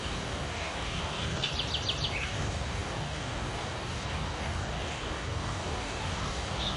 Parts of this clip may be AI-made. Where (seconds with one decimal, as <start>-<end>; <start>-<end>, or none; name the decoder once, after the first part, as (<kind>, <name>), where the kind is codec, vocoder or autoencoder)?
0.0-1.5 (codec, DAC); 2.2-6.8